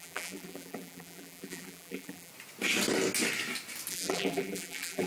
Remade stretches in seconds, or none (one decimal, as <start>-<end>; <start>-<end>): 0.0-2.3; 3.9-5.1